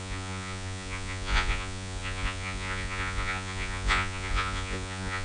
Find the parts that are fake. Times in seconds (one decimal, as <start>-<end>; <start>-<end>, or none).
0.0-5.2